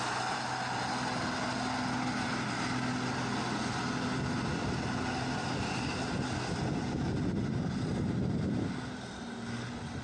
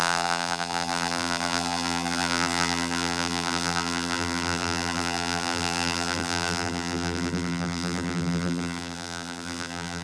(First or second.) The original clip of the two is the first